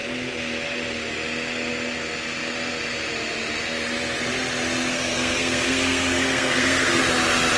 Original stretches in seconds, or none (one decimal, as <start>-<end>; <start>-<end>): 0.0-4.9; 7.0-7.6

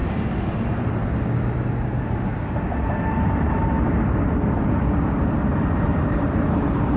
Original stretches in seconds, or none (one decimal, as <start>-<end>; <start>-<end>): 0.0-0.5; 1.0-1.6; 2.3-5.5

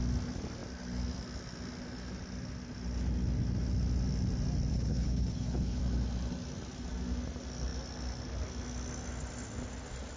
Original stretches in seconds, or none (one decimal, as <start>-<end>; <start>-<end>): 0.0-4.7; 5.8-10.2